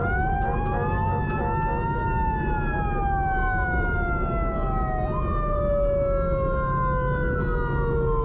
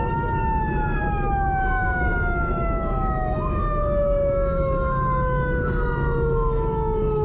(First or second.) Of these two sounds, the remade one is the second